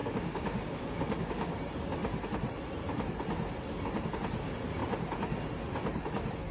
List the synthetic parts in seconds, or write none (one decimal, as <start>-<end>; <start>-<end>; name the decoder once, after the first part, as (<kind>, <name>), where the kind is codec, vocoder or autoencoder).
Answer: 0.0-1.5 (codec, DAC)